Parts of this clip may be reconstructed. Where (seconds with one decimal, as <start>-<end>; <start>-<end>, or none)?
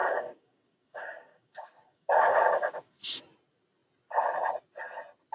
0.0-3.2